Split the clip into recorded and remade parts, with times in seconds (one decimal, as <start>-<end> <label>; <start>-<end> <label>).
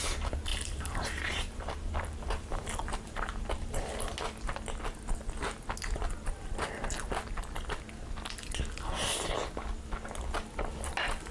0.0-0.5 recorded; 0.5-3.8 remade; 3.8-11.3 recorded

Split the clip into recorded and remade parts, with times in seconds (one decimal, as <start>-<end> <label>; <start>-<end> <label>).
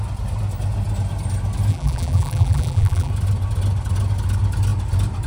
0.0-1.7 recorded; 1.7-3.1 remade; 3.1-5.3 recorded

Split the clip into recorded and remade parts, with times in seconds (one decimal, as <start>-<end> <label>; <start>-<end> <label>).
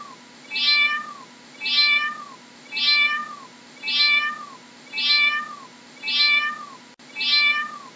0.0-8.0 recorded